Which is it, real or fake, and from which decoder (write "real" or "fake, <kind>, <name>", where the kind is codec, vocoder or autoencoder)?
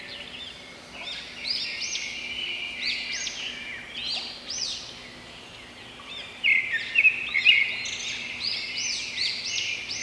real